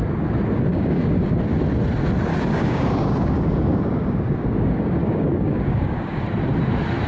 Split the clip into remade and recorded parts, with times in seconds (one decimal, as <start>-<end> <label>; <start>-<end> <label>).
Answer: 0.0-0.7 recorded; 0.7-1.3 remade; 1.3-2.3 recorded; 2.3-6.2 remade; 6.2-7.1 recorded